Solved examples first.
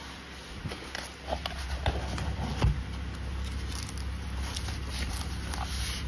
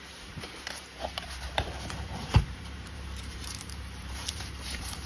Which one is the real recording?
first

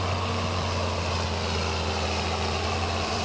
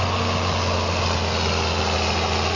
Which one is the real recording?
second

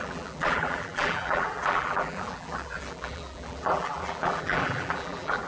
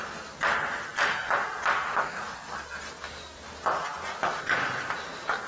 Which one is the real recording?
second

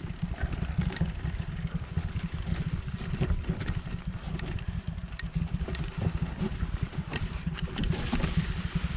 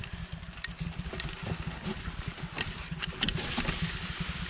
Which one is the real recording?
second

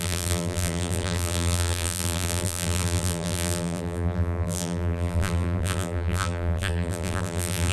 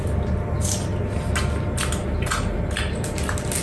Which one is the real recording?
second